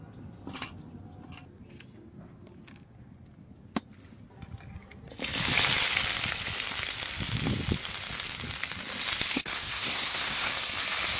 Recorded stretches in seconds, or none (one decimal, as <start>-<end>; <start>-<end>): 0.0-9.3; 10.5-11.2